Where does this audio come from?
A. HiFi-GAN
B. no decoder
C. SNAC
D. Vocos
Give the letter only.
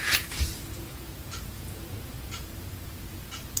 D